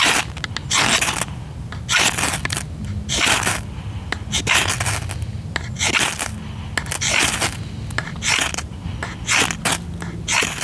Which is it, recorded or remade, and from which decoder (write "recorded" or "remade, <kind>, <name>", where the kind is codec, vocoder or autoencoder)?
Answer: recorded